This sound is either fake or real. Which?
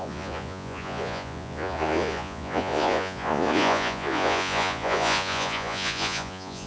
fake